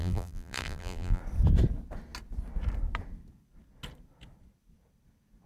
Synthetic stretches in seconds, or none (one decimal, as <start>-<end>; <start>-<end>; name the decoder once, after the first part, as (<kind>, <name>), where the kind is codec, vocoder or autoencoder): 0.0-1.2 (vocoder, BigVGAN v2)